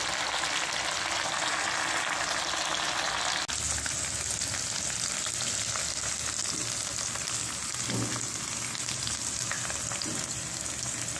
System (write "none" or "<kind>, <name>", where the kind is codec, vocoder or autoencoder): none